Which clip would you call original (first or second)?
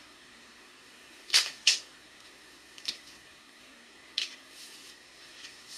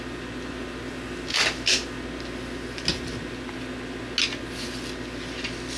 second